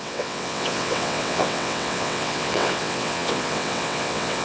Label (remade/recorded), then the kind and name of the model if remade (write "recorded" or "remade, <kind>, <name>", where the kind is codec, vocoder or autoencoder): remade, vocoder, WaveNeXt